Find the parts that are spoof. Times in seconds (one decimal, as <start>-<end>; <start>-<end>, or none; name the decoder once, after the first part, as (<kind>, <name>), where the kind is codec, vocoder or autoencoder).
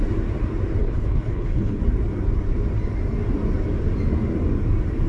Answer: 0.8-1.8 (codec, HILCodec)